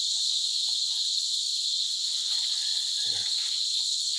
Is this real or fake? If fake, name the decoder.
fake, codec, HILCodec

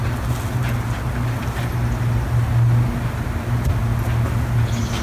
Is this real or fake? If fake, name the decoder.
real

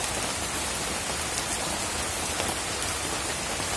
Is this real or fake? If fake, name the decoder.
real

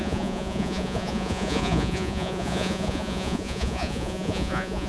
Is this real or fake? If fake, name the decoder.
fake, vocoder, Vocos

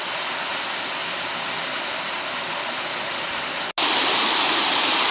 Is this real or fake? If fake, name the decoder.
real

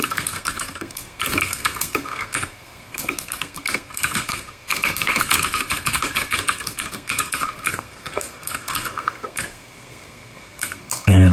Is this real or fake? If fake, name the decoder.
fake, codec, SNAC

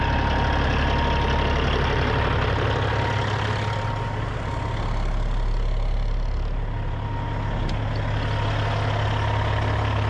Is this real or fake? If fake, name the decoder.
real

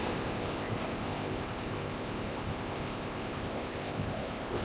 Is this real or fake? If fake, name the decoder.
fake, codec, ZipCodec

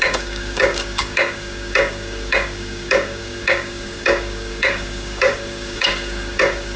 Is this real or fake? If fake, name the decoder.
fake, codec, DAC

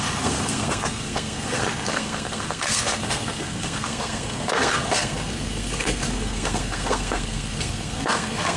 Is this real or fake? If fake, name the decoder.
fake, codec, SNAC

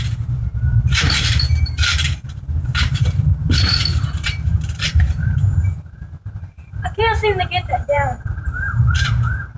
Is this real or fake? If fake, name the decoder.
fake, vocoder, BigVGAN v2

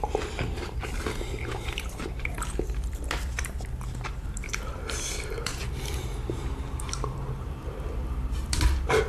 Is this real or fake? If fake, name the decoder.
fake, vocoder, BigVGAN v2